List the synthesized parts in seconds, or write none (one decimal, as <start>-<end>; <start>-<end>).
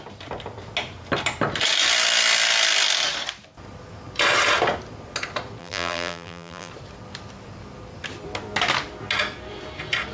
5.6-6.7